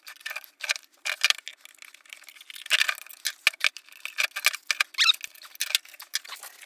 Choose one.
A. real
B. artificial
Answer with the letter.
A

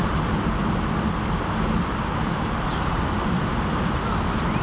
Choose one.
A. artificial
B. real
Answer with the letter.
B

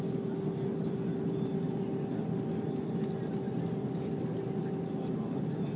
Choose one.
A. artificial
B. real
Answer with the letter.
B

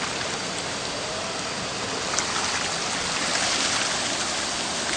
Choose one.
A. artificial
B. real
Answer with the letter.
B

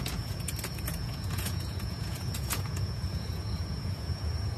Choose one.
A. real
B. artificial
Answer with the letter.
B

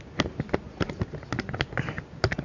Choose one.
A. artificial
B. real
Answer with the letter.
B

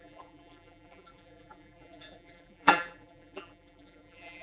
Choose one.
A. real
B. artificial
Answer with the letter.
B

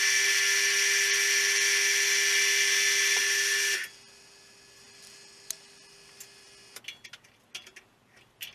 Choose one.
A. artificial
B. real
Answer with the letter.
B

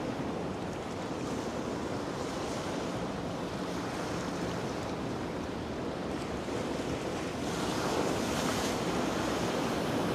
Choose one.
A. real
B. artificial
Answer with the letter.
B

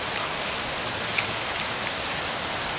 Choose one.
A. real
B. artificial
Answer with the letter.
A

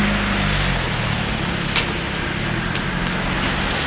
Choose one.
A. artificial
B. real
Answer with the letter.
B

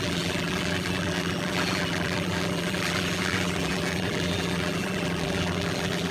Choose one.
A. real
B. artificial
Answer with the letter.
B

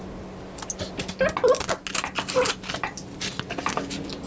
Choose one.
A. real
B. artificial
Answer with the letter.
A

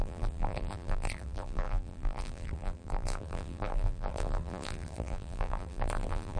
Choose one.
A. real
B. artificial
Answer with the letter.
B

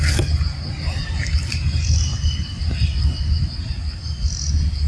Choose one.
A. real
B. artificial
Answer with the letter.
A